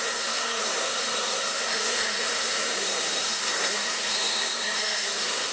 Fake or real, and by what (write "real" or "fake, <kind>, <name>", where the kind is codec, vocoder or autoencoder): fake, codec, SNAC